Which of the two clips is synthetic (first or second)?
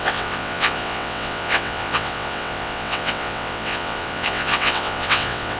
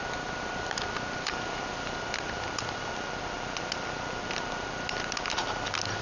first